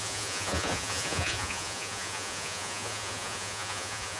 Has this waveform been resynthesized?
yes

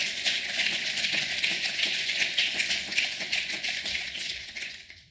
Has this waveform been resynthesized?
yes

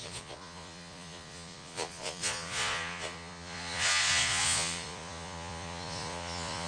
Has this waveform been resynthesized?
yes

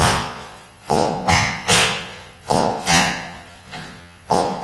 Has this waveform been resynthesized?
yes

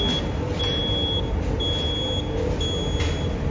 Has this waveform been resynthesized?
no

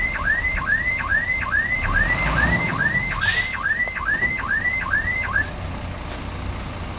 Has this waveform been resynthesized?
no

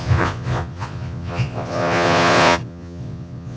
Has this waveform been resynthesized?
yes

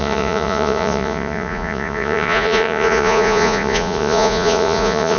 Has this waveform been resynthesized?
yes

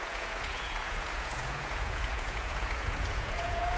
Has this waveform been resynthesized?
yes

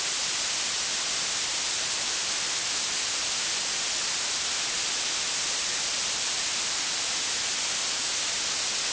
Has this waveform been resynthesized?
no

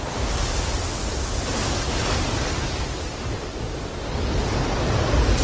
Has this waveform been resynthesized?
no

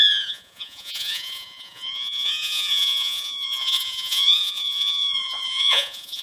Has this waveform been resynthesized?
yes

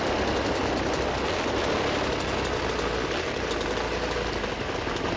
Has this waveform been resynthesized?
no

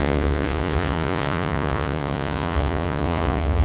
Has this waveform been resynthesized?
yes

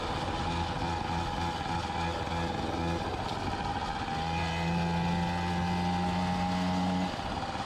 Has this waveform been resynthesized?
no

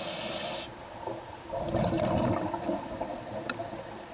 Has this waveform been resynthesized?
no